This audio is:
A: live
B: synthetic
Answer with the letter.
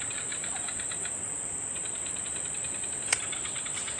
A